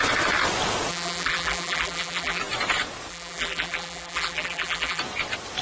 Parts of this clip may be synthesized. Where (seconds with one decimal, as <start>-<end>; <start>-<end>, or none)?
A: 0.9-2.4; 3.1-5.0